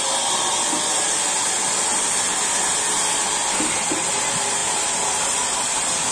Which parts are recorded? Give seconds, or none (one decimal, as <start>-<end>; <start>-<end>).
0.0-6.1